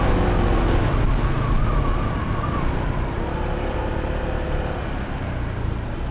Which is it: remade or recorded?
recorded